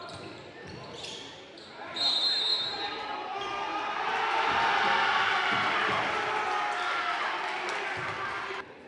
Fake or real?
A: real